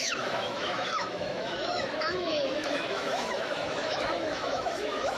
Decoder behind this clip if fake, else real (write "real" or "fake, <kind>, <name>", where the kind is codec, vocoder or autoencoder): fake, autoencoder, DAC-VAE